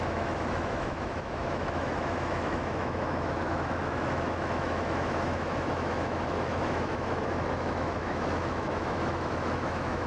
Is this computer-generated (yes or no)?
yes